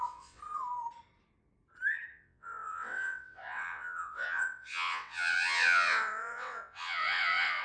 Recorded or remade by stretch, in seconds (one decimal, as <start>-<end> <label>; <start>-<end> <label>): 0.0-0.4 remade; 0.4-2.1 recorded; 2.1-7.6 remade

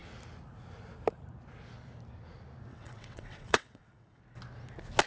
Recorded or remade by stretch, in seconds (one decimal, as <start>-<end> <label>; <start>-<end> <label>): 0.0-2.7 recorded; 2.7-4.2 remade; 4.2-5.1 recorded

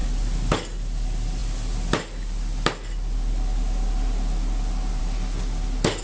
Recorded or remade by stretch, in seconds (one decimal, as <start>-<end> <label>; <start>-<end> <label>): 0.0-6.0 recorded

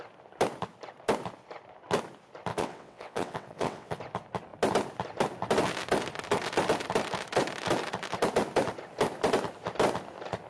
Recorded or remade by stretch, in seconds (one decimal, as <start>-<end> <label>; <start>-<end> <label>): 0.0-2.5 recorded; 2.5-4.0 remade; 4.0-10.5 recorded

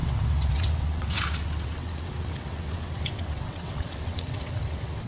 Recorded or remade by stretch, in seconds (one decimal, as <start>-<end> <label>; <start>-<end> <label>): 0.0-5.1 remade

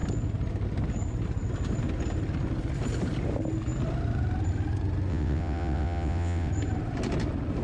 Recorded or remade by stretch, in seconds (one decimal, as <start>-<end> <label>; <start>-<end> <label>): 0.0-5.1 recorded; 5.1-6.5 remade; 6.5-7.6 recorded